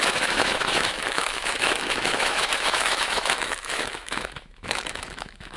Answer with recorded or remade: remade